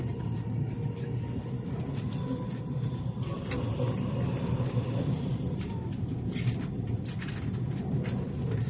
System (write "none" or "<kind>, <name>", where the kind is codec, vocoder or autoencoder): none